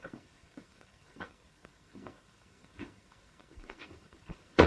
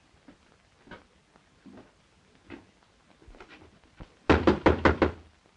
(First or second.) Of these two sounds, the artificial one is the first